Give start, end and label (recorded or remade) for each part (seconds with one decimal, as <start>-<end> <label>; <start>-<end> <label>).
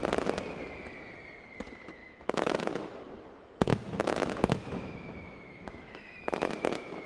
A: 0.0-2.0 recorded; 2.0-3.1 remade; 3.1-3.7 recorded; 3.7-7.1 remade